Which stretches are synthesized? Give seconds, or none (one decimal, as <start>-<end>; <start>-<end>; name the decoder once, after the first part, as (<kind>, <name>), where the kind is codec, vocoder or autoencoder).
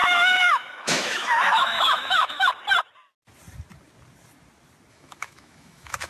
0.0-2.5 (autoencoder, DAC-VAE); 4.9-6.1